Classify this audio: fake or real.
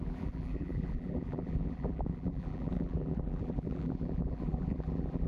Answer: fake